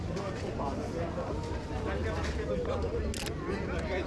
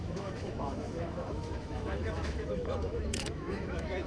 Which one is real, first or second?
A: first